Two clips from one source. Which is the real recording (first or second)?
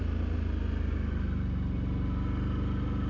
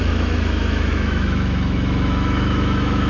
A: first